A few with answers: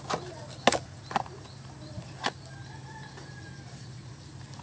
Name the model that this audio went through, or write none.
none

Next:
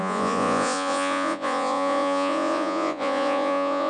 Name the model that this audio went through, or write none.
vocoder, Vocos